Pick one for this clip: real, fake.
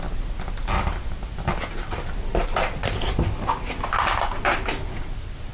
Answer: real